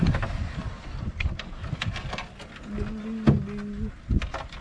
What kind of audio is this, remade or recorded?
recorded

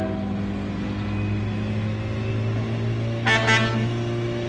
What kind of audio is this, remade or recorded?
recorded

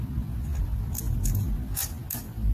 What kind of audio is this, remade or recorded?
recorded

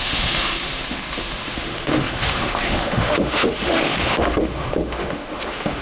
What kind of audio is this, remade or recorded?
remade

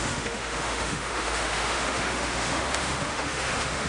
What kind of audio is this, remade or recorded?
remade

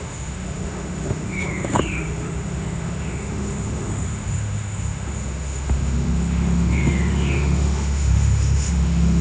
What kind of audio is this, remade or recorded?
remade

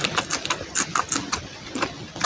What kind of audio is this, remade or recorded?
recorded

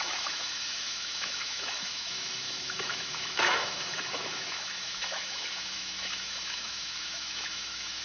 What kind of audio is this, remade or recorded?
remade